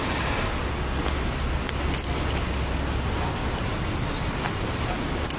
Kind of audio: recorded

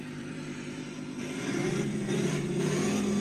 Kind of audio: remade